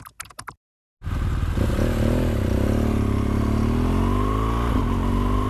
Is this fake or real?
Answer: real